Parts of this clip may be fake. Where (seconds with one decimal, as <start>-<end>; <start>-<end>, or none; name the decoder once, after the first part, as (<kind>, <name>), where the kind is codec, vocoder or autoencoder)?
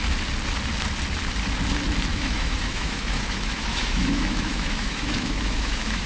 2.1-6.1 (autoencoder, DAC-VAE)